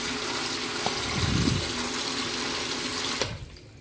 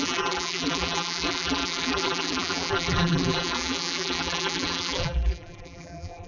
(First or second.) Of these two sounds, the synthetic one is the second